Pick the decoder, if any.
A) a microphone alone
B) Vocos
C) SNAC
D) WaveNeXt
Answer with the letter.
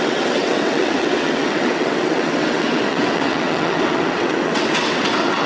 D